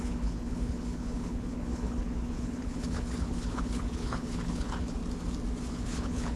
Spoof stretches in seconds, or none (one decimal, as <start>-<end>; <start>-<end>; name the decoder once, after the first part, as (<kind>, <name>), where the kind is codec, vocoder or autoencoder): 0.0-5.0 (codec, HILCodec); 5.7-6.4